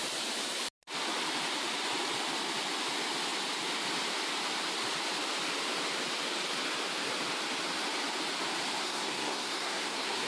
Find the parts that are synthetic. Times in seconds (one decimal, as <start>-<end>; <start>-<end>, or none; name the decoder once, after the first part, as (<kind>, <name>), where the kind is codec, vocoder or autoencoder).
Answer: 8.8-10.3 (codec, SNAC)